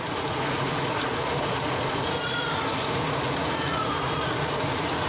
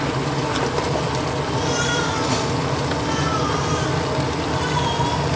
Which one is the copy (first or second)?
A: first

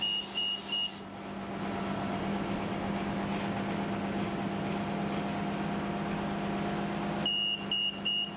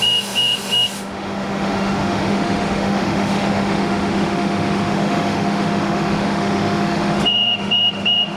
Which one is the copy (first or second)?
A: second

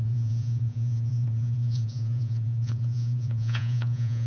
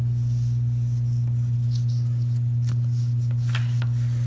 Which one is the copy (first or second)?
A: first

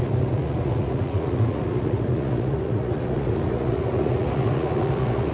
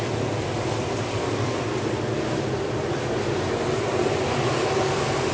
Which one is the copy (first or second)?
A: first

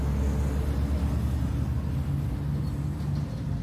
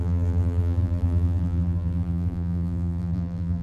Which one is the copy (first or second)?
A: second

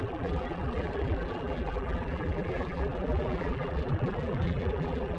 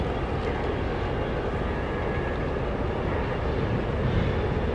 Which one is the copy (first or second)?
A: first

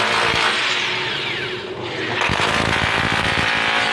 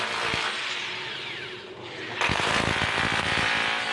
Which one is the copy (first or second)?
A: second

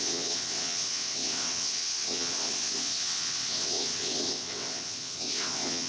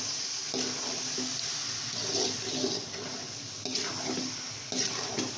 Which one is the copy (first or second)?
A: first